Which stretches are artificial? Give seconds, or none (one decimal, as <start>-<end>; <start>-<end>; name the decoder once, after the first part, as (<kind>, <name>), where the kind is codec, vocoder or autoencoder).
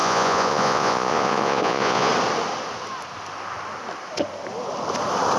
0.0-2.1 (vocoder, Vocos)